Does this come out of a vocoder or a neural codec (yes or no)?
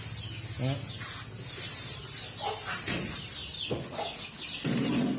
no